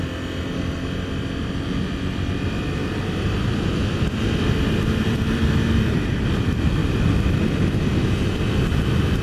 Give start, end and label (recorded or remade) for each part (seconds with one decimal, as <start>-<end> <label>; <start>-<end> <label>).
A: 0.0-2.8 recorded; 2.8-5.5 remade; 5.5-6.8 recorded; 6.8-8.0 remade; 8.0-9.2 recorded